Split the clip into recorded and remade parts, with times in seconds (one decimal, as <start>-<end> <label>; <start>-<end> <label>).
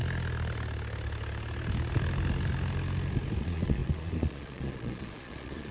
0.0-3.4 recorded; 3.4-5.7 remade